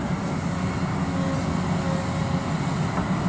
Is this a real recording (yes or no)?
yes